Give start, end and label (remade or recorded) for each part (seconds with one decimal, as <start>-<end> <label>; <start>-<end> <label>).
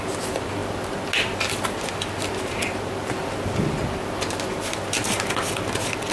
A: 0.0-6.1 recorded